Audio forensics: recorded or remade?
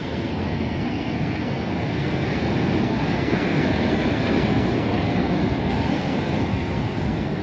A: remade